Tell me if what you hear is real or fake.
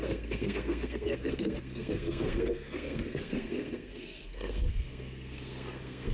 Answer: fake